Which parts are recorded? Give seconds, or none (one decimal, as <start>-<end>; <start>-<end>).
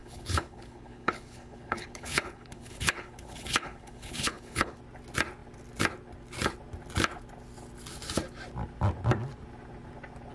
4.8-10.3